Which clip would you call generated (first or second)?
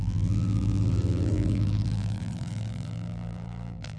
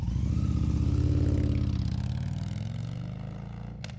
first